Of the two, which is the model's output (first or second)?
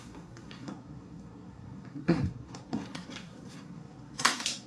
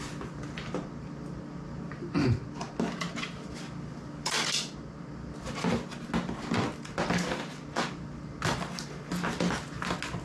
first